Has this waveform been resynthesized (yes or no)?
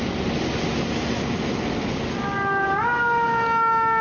no